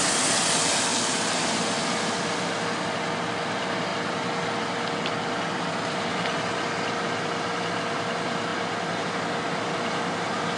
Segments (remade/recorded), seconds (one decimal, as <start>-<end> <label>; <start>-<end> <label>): 0.0-10.6 recorded